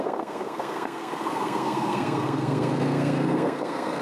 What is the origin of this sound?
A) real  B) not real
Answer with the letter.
B